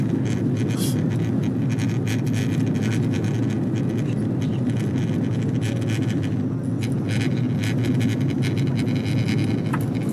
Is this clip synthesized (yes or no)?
no